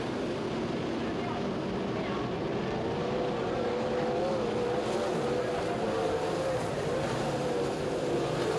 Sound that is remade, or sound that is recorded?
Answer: recorded